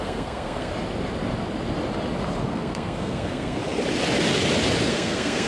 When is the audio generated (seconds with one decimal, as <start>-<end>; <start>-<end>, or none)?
0.0-0.7; 2.4-3.6; 4.9-5.5